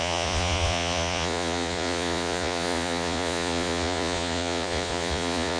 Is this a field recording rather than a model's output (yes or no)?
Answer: no